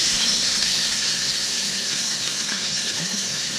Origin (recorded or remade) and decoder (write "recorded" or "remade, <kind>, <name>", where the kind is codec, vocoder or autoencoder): remade, codec, SNAC